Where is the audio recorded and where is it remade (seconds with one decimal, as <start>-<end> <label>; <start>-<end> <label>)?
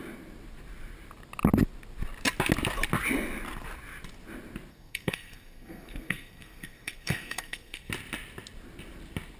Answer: 0.0-4.7 recorded; 4.7-7.9 remade; 7.9-9.4 recorded